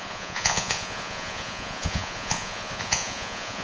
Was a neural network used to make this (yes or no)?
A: yes